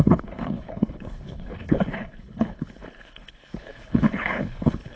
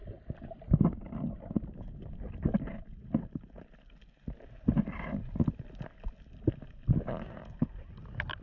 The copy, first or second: first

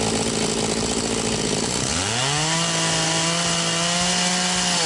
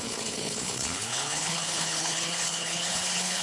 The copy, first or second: second